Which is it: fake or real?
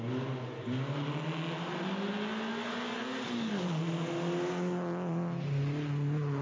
real